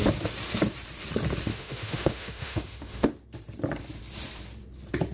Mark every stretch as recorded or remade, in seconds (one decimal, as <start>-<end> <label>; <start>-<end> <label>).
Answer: 0.0-1.5 recorded; 1.5-3.1 remade; 3.1-5.1 recorded